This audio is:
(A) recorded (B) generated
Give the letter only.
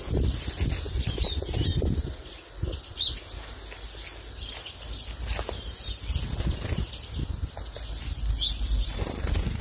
A